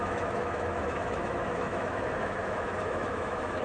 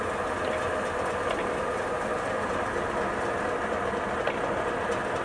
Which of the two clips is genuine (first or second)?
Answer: second